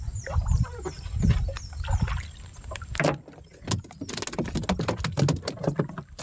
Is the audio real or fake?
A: real